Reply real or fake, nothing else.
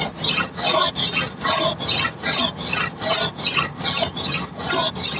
real